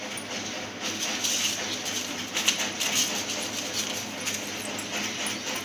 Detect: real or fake real